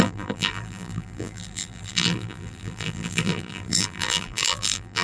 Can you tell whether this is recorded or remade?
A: remade